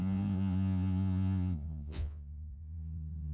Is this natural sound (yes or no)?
no